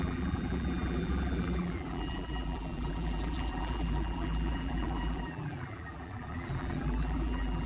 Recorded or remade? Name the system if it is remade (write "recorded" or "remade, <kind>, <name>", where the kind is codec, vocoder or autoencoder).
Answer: remade, vocoder, BigVGAN v2